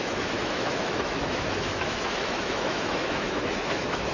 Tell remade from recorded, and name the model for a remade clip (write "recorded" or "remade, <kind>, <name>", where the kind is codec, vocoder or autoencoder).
remade, autoencoder, DAC-VAE